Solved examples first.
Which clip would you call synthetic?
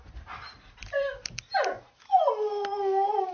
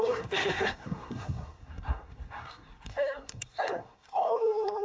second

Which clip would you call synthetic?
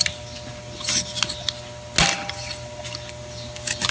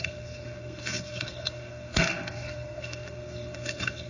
second